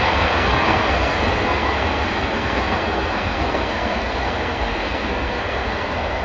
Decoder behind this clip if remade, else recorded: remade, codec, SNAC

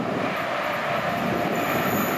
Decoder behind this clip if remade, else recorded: recorded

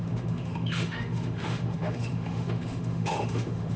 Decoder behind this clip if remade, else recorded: remade, autoencoder, DAC-VAE